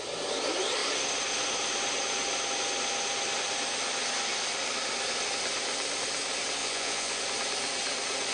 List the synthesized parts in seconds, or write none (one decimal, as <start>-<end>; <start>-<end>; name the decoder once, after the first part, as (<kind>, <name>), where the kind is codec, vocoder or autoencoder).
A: 6.6-7.2 (vocoder, Vocos)